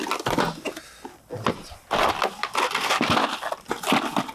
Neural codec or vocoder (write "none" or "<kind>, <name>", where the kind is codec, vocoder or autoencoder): none